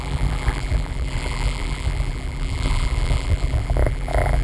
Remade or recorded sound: remade